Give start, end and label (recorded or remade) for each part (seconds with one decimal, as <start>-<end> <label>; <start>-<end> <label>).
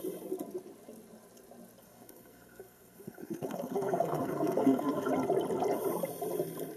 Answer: 0.0-1.8 recorded; 1.8-5.1 remade; 5.1-6.8 recorded